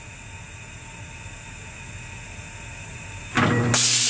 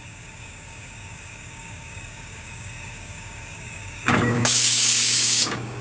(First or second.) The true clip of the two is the first